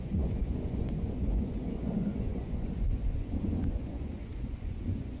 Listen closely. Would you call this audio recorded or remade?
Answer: remade